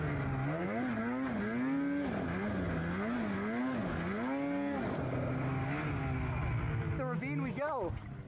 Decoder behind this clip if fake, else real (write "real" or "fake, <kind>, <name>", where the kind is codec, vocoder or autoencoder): real